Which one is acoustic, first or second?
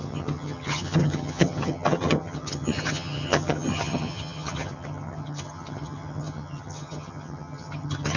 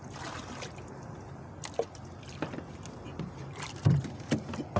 second